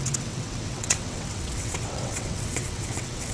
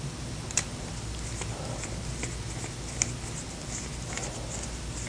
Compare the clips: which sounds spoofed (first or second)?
first